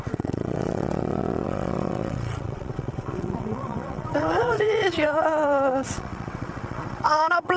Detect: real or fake fake